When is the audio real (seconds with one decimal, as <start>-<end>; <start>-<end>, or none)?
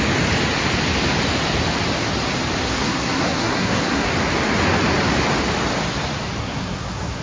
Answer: 0.0-2.6; 4.1-6.4